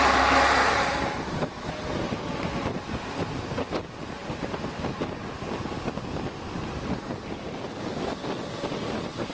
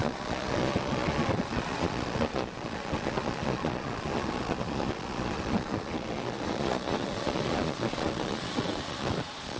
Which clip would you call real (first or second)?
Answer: first